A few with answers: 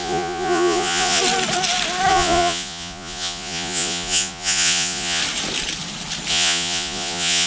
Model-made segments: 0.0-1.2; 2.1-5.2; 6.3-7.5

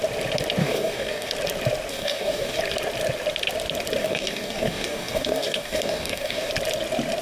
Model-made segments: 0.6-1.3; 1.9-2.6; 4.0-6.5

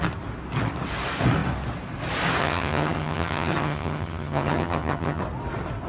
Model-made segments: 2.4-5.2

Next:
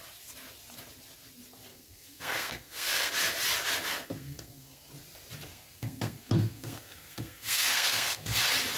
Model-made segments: 1.7-3.1; 3.9-4.9; 5.5-8.4